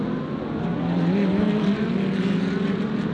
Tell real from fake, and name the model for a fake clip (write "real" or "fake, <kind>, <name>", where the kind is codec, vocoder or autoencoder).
real